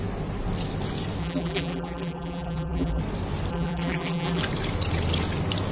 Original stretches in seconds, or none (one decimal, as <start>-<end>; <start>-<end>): 0.0-1.2; 3.0-3.5; 4.4-5.7